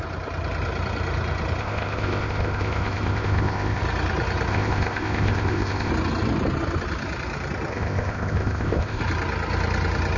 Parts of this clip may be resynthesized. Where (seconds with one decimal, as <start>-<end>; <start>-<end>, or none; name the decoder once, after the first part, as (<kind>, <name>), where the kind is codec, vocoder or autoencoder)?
1.6-3.8 (codec, ZipCodec); 4.5-5.9; 7.7-9.0